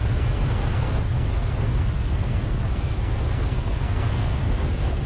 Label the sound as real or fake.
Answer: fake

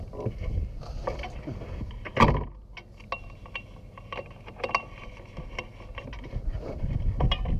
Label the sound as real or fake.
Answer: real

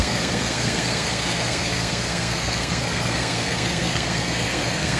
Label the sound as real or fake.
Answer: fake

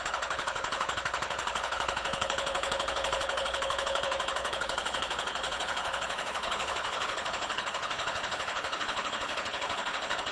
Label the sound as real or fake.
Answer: fake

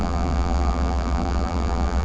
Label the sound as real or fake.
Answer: fake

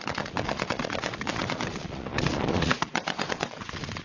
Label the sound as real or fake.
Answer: fake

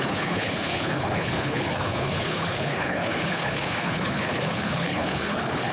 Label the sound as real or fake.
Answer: fake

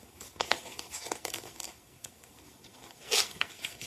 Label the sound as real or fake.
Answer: fake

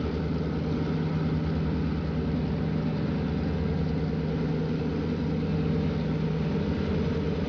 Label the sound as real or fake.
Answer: real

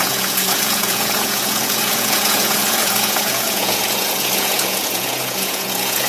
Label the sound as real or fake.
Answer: fake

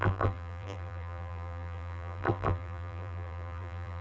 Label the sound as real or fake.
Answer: fake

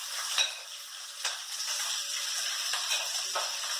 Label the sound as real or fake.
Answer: fake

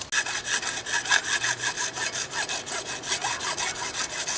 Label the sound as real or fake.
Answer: real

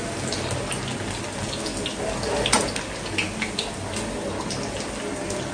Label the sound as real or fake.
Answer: real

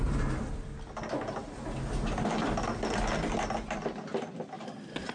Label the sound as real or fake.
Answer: real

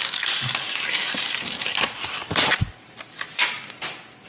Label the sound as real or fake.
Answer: fake